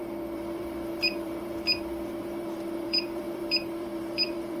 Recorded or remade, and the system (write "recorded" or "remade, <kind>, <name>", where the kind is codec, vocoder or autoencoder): remade, vocoder, BigVGAN v2